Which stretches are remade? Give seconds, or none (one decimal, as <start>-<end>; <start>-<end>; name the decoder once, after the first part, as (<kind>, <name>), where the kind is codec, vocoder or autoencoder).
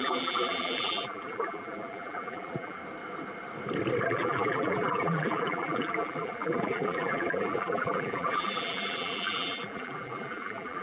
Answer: 0.0-2.8 (vocoder, BigVGAN v2); 4.1-10.8